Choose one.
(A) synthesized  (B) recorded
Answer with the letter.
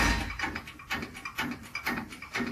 B